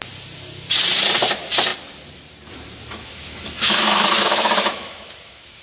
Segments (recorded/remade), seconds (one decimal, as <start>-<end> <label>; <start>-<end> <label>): 0.0-3.0 recorded; 3.0-5.6 remade